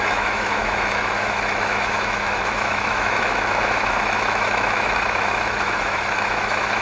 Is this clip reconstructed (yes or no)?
yes